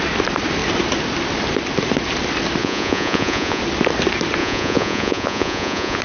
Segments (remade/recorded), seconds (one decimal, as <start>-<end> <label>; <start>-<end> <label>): 0.0-2.6 recorded; 2.6-3.6 remade; 3.6-4.4 recorded; 4.4-6.0 remade